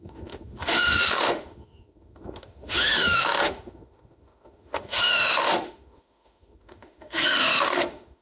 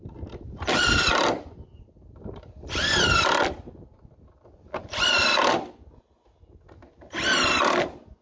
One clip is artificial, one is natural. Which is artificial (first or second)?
first